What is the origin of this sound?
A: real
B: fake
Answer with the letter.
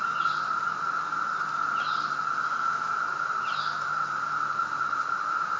A